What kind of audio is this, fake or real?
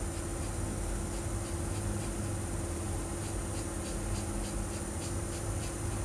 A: real